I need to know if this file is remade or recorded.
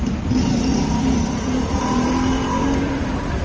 remade